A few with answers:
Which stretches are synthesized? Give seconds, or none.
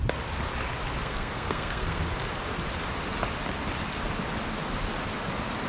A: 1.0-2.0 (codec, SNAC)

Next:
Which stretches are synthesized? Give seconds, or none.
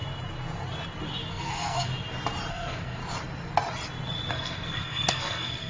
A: 1.3-1.9 (codec, SNAC); 2.5-3.0; 4.3-5.7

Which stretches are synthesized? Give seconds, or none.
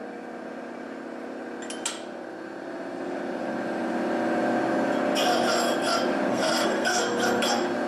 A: 6.3-7.0 (codec, SNAC)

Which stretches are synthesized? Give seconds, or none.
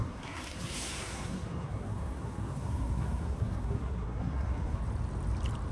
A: 0.0-4.8 (codec, SNAC)